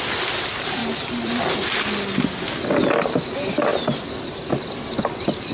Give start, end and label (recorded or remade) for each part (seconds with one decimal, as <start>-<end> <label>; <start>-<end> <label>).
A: 0.0-0.8 recorded; 0.8-1.4 remade; 1.4-3.7 recorded; 3.7-4.5 remade; 4.5-5.5 recorded